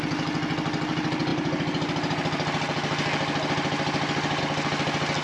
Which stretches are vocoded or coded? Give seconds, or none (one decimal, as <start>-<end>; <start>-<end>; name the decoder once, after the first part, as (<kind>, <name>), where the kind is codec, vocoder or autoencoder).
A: none